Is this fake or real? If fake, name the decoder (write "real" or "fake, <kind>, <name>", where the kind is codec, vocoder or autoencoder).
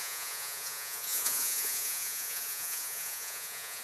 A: fake, vocoder, Vocos